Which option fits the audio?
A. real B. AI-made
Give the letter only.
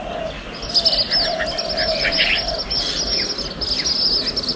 A